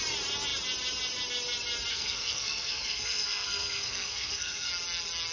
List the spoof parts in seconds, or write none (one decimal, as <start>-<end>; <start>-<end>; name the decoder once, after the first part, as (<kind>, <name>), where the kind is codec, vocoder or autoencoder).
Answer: 1.9-4.7 (codec, SNAC)